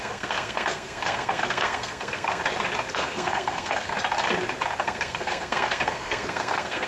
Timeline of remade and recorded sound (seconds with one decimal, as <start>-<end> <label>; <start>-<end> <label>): 0.0-2.4 remade; 2.4-2.9 recorded; 2.9-3.9 remade; 3.9-4.8 recorded; 4.8-6.9 remade